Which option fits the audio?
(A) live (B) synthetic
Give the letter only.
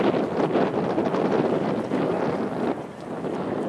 A